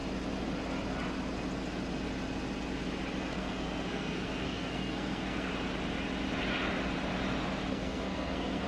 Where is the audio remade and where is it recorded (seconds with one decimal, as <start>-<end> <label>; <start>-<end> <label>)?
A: 0.0-3.2 recorded; 3.2-5.5 remade; 5.5-7.7 recorded; 7.7-8.7 remade